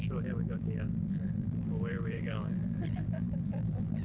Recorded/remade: remade